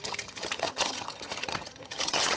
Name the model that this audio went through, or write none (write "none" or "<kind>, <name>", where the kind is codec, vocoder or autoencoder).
vocoder, HiFi-GAN